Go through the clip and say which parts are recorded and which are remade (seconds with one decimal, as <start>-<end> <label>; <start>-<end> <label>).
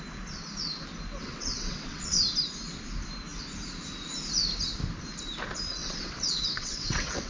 0.0-1.2 recorded; 1.2-2.2 remade; 2.2-5.8 recorded; 5.8-7.3 remade